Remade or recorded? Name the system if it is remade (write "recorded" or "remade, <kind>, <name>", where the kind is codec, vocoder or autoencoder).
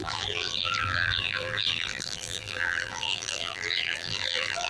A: remade, vocoder, BigVGAN v2